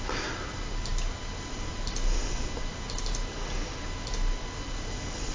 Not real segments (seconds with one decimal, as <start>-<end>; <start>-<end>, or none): none